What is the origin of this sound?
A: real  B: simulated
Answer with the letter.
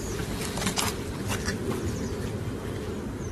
A